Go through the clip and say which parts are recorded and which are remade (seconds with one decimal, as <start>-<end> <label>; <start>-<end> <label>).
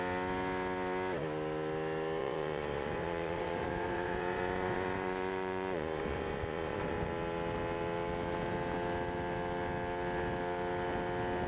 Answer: 0.0-2.2 recorded; 2.2-7.1 remade; 7.1-11.5 recorded